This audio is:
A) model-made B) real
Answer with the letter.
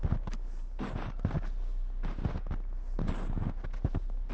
B